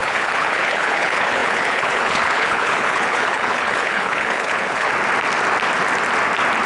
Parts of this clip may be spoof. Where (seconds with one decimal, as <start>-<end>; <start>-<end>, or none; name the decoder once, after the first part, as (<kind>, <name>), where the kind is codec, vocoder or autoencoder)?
0.0-4.9 (codec, HILCodec)